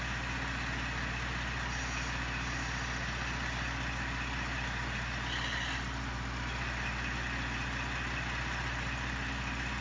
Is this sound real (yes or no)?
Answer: yes